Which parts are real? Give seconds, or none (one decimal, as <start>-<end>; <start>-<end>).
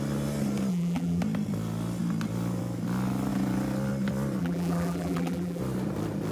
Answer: 0.0-0.7; 1.2-4.4; 5.6-6.3